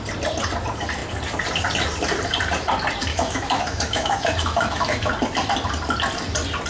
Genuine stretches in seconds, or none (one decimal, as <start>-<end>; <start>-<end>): 0.0-3.1; 5.1-6.7